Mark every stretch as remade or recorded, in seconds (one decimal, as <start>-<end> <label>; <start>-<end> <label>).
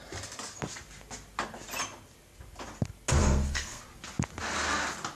0.0-3.2 recorded; 3.2-3.8 remade; 3.8-5.1 recorded